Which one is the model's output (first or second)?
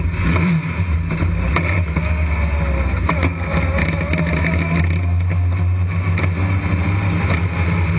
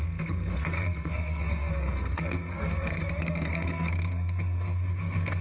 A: second